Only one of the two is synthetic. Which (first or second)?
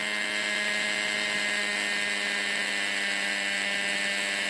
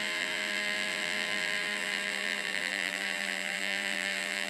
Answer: second